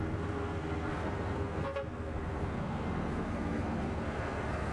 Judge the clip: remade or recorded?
remade